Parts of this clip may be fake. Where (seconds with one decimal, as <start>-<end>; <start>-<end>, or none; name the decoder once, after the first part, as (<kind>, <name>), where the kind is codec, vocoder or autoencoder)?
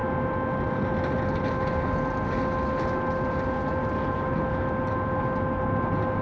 none